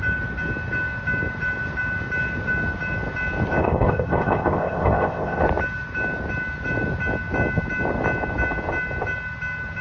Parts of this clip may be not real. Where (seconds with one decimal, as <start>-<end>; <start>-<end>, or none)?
3.6-5.4